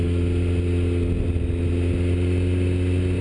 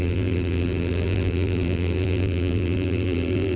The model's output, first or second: second